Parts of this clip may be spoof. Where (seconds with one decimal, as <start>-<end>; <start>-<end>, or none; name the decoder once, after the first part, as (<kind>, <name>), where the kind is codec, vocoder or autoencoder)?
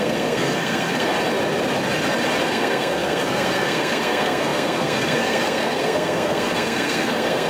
0.0-1.1 (codec, SNAC); 2.4-7.5